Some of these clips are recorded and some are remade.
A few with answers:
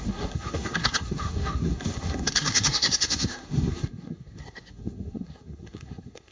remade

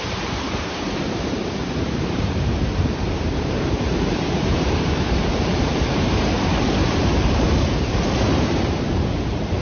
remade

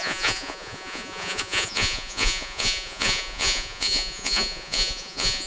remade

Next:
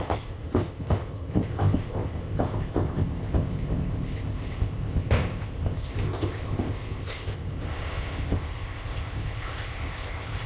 remade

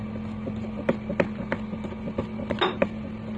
recorded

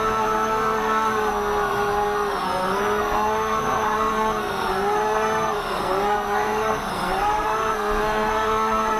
remade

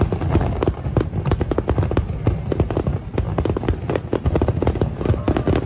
recorded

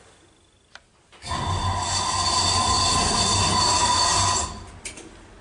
recorded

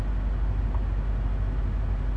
recorded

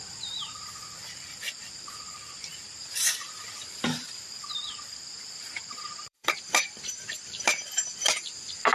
remade